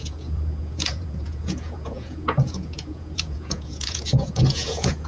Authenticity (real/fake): fake